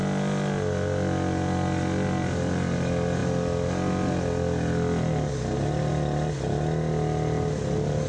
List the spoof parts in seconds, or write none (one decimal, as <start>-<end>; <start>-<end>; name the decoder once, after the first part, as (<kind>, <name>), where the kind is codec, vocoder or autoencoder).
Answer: none